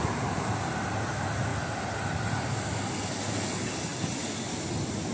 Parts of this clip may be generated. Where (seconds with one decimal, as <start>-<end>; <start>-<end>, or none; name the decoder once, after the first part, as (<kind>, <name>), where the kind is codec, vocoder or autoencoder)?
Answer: none